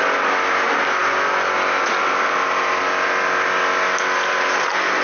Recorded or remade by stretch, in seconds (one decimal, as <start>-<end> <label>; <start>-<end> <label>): 0.0-5.0 recorded

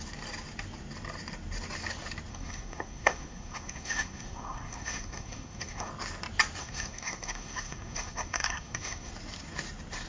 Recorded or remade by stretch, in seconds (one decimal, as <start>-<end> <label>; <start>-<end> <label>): 0.0-2.3 recorded; 2.3-5.9 remade; 5.9-6.6 recorded; 6.6-9.1 remade; 9.1-10.1 recorded

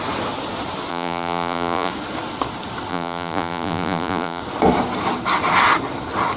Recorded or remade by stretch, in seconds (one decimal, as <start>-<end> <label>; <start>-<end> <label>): 0.0-0.9 recorded; 0.9-1.9 remade; 1.9-2.9 recorded; 2.9-4.4 remade; 4.4-6.4 recorded

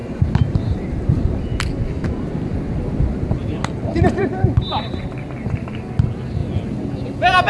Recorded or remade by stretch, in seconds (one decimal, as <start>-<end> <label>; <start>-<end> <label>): 0.0-1.6 remade; 1.6-3.4 recorded; 3.4-5.0 remade; 5.0-7.5 recorded

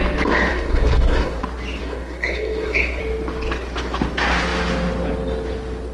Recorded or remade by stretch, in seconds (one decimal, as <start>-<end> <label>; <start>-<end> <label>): 0.0-0.5 recorded; 0.5-1.4 remade; 1.4-1.8 recorded; 1.8-3.0 remade; 3.0-5.9 recorded

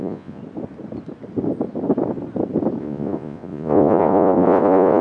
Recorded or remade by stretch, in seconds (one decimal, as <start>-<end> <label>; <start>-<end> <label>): 0.0-0.4 remade; 0.4-2.8 recorded; 2.8-5.0 remade

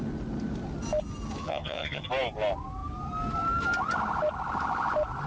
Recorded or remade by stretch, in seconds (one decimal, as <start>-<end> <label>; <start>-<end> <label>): 0.0-1.4 recorded; 1.4-2.1 remade; 2.1-5.3 recorded

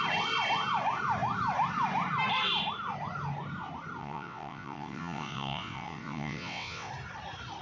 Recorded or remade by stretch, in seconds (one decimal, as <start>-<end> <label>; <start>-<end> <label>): 0.0-4.0 recorded; 4.0-6.9 remade; 6.9-7.6 recorded